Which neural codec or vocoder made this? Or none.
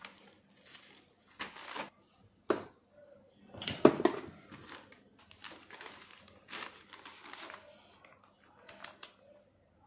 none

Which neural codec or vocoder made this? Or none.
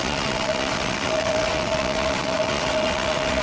vocoder, WaveNeXt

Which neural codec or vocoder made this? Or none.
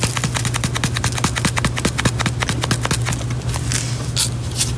none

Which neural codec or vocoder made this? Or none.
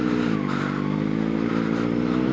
none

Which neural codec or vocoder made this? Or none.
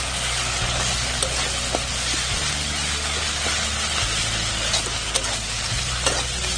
none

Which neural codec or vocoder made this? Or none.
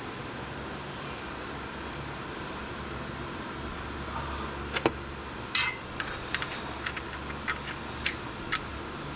none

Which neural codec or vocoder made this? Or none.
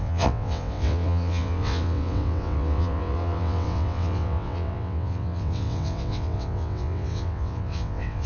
vocoder, WaveNeXt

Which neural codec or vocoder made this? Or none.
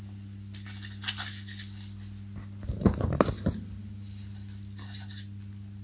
none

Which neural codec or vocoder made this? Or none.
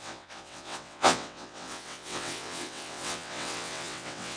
vocoder, WaveNeXt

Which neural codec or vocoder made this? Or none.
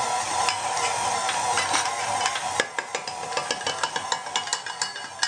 none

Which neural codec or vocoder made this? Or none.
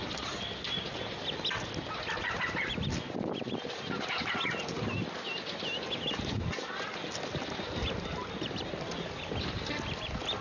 none